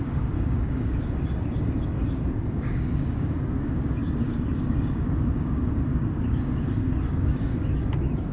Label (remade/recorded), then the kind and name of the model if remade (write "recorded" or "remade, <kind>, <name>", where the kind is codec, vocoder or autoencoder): remade, codec, DAC